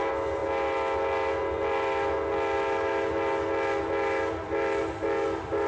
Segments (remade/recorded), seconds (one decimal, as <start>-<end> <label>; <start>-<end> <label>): 0.0-5.7 recorded